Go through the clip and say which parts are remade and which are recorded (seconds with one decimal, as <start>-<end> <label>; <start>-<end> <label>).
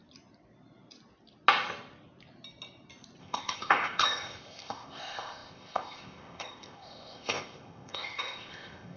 0.0-3.2 recorded; 3.2-9.0 remade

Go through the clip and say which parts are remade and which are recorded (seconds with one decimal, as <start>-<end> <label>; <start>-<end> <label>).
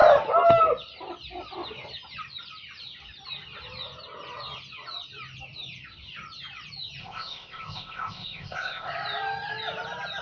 0.0-7.0 recorded; 7.0-8.9 remade; 8.9-10.2 recorded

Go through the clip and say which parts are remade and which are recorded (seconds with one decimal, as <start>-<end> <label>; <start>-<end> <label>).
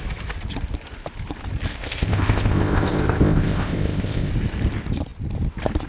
0.0-1.7 recorded; 1.7-4.3 remade; 4.3-5.9 recorded